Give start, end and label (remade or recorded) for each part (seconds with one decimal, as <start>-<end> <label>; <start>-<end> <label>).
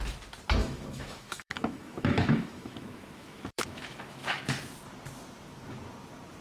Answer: 0.0-0.6 recorded; 0.6-4.4 remade; 4.4-6.4 recorded